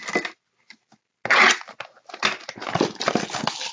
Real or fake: real